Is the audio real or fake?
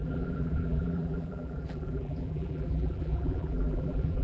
fake